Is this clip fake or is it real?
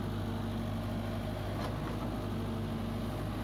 real